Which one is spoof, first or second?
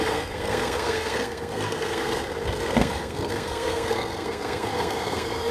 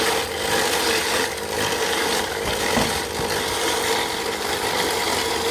first